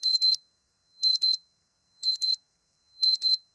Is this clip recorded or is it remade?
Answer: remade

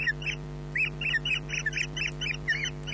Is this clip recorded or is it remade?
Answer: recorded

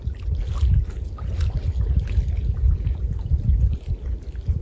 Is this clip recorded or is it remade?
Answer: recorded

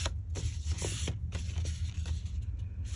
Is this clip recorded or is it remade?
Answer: recorded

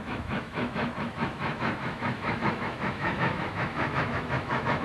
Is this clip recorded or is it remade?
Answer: remade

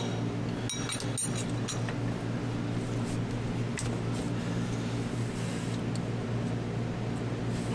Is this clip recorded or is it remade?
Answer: recorded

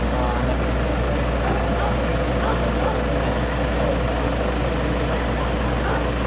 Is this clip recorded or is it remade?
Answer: recorded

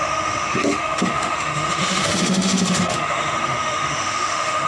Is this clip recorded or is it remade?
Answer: remade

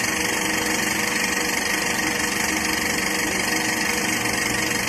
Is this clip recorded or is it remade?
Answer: recorded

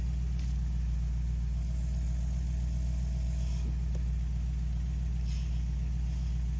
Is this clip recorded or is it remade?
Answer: recorded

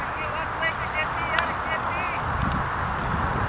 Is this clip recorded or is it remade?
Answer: recorded